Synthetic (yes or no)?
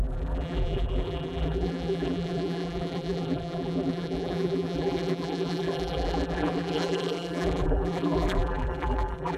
yes